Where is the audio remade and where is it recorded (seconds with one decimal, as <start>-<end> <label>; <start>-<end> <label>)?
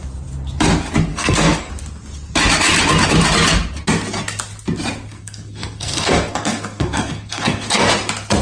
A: 0.0-1.1 recorded; 1.1-1.7 remade; 1.7-5.1 recorded; 5.1-7.9 remade; 7.9-8.4 recorded